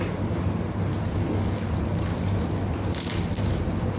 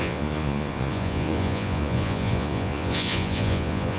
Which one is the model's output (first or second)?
second